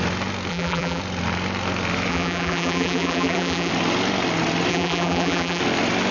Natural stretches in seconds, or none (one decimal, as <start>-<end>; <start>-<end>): 0.0-0.5; 1.0-2.1; 3.7-4.7; 5.6-6.1